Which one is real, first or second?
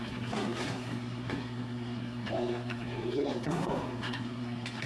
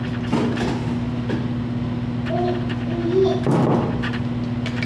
second